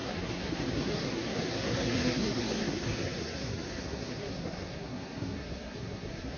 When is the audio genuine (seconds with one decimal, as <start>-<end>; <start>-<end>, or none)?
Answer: none